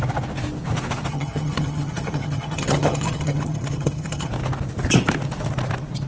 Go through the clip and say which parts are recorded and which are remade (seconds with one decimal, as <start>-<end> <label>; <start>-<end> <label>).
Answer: 0.0-1.1 recorded; 1.1-4.3 remade; 4.3-6.1 recorded